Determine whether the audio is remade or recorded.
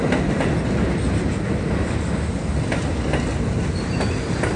recorded